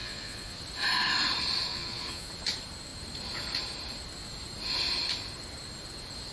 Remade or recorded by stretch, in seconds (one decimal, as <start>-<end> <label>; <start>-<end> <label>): 0.0-0.6 remade; 0.6-1.7 recorded; 1.7-2.3 remade; 2.3-6.3 recorded